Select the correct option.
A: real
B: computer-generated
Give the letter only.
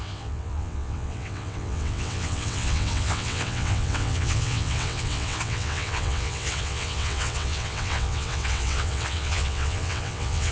B